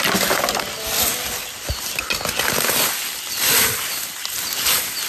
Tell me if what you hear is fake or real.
real